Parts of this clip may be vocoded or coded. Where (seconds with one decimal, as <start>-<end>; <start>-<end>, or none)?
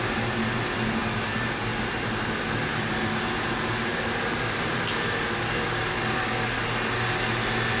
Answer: 3.9-6.2